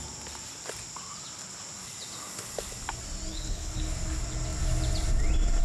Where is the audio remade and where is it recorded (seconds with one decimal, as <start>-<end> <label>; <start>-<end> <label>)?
0.0-3.3 recorded; 3.3-3.8 remade; 3.8-5.6 recorded